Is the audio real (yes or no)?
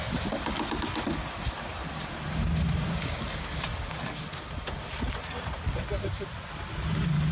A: yes